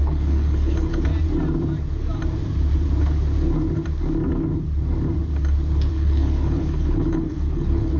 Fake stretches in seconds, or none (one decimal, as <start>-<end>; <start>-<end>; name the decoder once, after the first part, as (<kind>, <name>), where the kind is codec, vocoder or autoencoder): 0.0-1.1 (codec, HILCodec); 5.9-8.0